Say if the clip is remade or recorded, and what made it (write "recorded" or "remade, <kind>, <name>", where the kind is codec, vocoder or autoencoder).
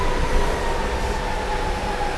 recorded